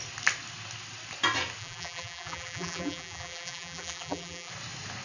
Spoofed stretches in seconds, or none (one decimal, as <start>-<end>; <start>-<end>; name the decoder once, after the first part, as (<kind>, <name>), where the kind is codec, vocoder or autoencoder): 1.6-4.5 (vocoder, BigVGAN v2)